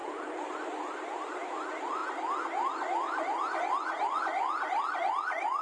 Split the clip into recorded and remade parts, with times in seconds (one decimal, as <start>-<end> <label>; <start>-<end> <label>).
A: 0.0-5.6 recorded